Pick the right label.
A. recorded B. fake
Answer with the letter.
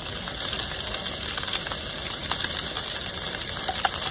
A